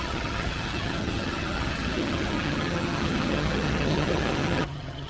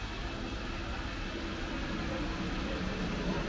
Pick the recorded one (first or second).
second